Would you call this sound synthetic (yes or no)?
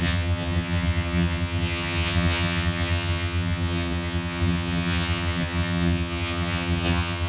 yes